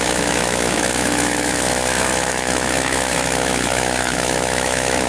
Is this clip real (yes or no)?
no